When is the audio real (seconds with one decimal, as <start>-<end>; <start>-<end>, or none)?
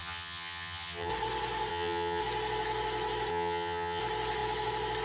1.1-1.7; 2.2-3.3; 4.0-5.0